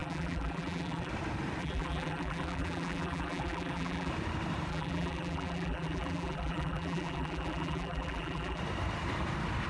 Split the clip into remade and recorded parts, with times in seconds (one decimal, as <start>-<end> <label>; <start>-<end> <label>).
0.0-1.1 remade; 1.1-1.6 recorded; 1.6-4.1 remade; 4.1-4.7 recorded; 4.7-8.6 remade; 8.6-9.7 recorded